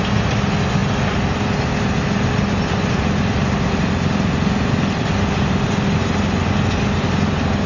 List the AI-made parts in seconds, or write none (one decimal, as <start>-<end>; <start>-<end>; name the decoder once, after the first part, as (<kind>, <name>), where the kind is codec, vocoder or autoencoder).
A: none